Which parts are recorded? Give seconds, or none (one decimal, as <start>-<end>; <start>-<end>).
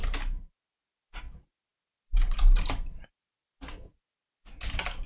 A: 0.0-5.1